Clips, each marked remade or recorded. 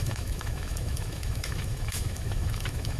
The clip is remade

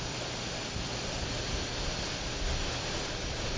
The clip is recorded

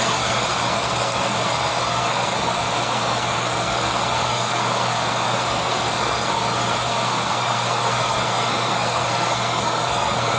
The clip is remade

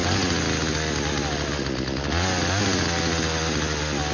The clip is recorded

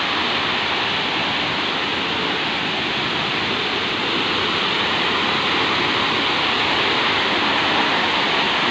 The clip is recorded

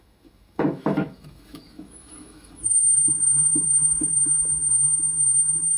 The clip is remade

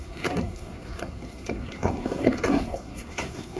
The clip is remade